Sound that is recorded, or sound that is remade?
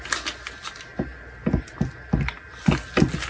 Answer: recorded